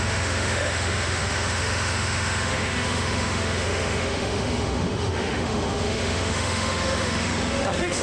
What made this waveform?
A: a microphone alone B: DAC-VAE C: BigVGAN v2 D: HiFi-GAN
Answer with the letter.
B